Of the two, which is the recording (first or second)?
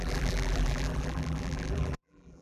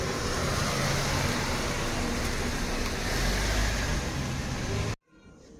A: second